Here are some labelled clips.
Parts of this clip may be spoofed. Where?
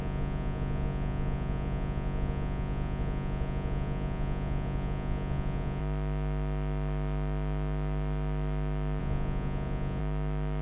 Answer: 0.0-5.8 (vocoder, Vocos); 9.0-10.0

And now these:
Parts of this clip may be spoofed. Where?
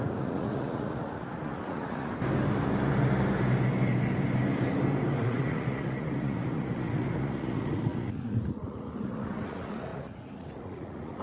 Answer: 0.0-2.1 (vocoder, Vocos); 5.2-11.2